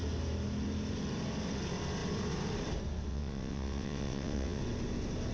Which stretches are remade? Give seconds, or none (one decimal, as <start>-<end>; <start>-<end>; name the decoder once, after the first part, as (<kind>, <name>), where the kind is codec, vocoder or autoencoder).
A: 3.1-4.6 (vocoder, WaveNeXt)

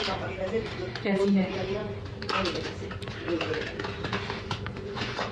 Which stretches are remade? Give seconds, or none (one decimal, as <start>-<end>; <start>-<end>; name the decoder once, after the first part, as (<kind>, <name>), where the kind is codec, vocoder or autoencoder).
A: 0.0-1.8 (vocoder, Vocos); 4.4-5.3